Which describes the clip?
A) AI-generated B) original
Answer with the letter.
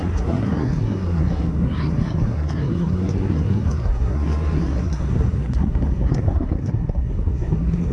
A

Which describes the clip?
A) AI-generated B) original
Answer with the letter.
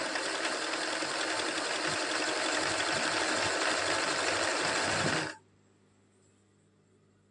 B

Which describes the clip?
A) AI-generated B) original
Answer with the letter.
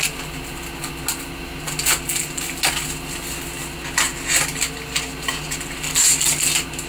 B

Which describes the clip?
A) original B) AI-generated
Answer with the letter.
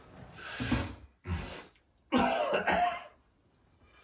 A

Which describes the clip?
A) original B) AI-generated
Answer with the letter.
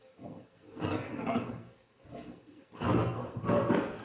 B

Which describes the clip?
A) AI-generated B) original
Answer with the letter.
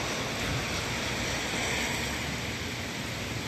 B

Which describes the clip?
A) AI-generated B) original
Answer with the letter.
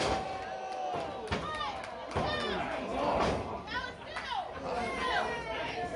B